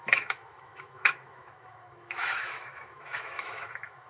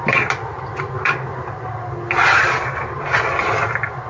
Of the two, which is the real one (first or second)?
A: second